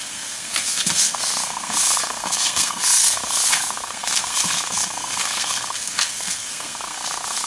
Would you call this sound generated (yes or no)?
yes